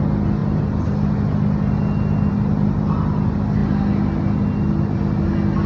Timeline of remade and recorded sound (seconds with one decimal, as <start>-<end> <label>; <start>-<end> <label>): 0.0-5.7 recorded